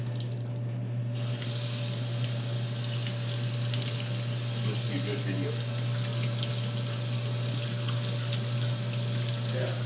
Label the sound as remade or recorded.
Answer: recorded